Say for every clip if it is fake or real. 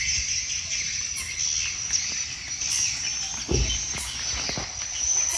real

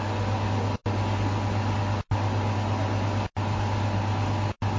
real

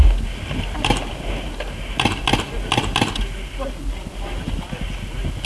real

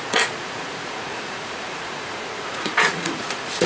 fake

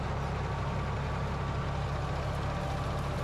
real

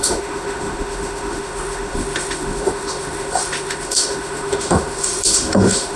fake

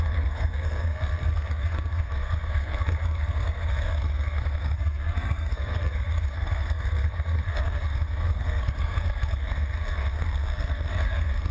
fake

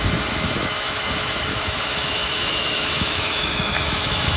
fake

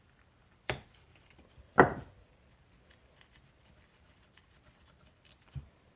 fake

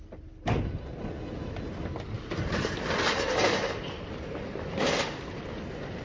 real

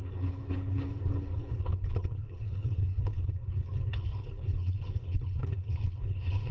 fake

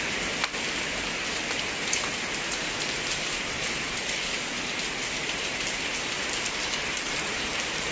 real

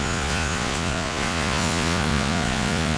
fake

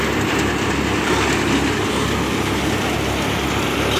real